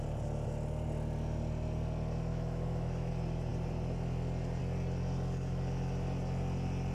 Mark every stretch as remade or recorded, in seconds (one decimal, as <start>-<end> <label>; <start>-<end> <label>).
0.0-2.3 recorded; 2.3-3.1 remade; 3.1-6.9 recorded